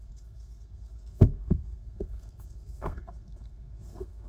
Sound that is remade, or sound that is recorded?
remade